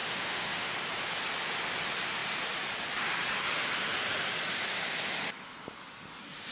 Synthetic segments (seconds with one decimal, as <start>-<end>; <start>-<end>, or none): 0.0-0.7